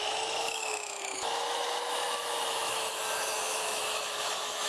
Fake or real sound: fake